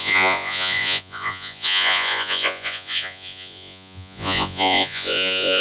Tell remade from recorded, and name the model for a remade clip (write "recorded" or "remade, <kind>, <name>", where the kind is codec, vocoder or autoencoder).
remade, vocoder, Vocos